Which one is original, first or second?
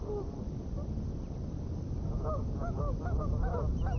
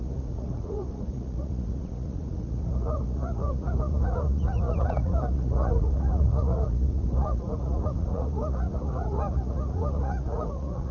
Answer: first